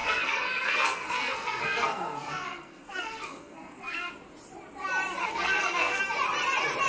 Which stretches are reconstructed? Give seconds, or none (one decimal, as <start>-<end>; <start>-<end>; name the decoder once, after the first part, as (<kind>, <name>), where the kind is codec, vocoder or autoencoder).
0.0-4.1 (codec, SNAC); 5.2-6.0